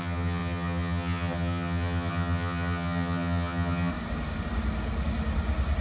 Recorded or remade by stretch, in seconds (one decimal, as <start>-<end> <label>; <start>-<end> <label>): 0.0-3.9 remade; 3.9-5.8 recorded